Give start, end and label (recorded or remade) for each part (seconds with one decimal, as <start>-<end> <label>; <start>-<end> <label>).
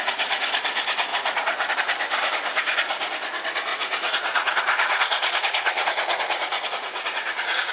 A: 0.0-1.1 recorded; 1.1-1.7 remade; 1.7-3.7 recorded; 3.7-7.7 remade